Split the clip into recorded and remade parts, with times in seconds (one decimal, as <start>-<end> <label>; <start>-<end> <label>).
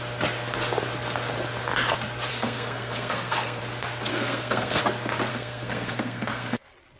0.0-2.3 recorded; 2.3-3.6 remade; 3.6-4.1 recorded; 4.1-4.8 remade; 4.8-5.3 recorded; 5.3-6.6 remade; 6.6-7.0 recorded